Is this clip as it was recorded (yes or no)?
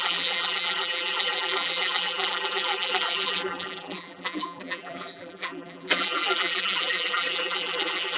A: no